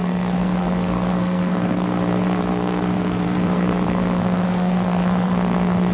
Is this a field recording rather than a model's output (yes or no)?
no